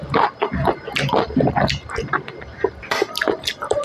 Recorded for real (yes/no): yes